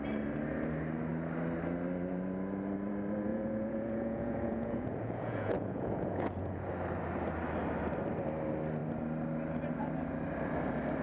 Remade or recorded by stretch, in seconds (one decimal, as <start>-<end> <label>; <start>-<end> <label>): 0.0-3.3 recorded; 3.3-6.6 remade; 6.6-11.0 recorded